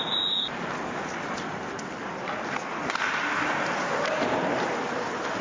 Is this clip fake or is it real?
real